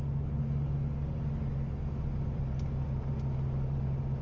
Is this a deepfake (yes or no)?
no